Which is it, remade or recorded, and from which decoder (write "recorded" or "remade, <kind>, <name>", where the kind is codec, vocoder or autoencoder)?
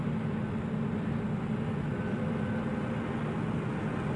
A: recorded